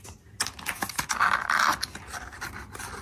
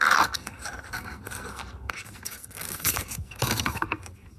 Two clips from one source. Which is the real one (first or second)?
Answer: first